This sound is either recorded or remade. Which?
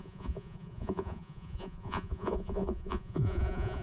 remade